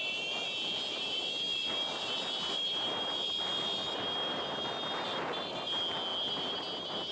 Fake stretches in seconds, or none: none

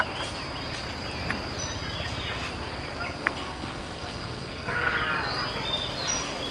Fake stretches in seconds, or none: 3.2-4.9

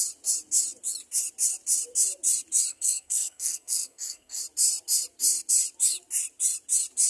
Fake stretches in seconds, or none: 2.7-4.4